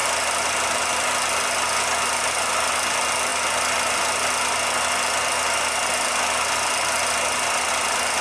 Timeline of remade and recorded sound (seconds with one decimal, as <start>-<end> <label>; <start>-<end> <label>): 0.0-8.2 recorded

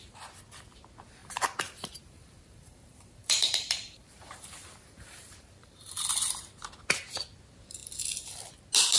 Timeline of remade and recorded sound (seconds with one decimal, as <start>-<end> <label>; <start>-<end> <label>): 0.0-1.2 recorded; 1.2-5.9 remade; 5.9-9.0 recorded

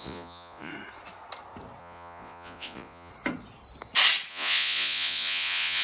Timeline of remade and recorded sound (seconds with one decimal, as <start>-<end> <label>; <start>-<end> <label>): 0.0-0.7 remade; 0.7-1.8 recorded; 1.8-3.1 remade; 3.1-4.3 recorded; 4.3-5.8 remade

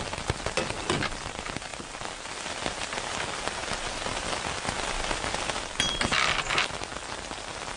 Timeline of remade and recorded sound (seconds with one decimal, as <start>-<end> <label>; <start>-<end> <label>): 0.0-7.8 recorded

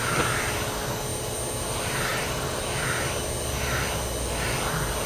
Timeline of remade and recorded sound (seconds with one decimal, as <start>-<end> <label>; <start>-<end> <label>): 0.0-2.1 recorded; 2.1-2.6 remade; 2.6-5.1 recorded

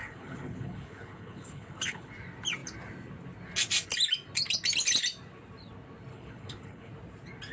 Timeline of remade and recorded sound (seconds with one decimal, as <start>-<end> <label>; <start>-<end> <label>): 0.0-2.1 remade; 2.1-6.1 recorded; 6.1-6.9 remade; 6.9-7.5 recorded

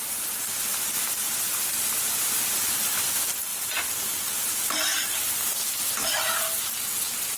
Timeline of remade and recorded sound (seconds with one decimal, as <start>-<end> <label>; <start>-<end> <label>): 0.0-7.4 remade

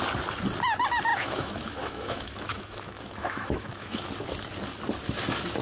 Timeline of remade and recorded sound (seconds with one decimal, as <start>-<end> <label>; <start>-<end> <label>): 0.0-1.1 recorded; 1.1-4.1 remade; 4.1-5.6 recorded